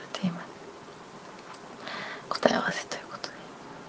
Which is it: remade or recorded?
recorded